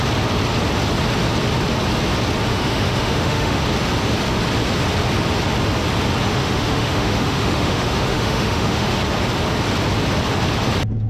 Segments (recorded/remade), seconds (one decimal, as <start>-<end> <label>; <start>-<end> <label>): 0.0-2.5 recorded; 2.5-3.6 remade; 3.6-6.4 recorded; 6.4-8.9 remade; 8.9-11.1 recorded